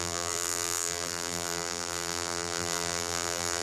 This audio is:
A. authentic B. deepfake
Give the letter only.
B